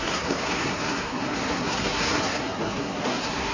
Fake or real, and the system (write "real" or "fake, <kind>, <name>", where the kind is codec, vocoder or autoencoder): fake, codec, SNAC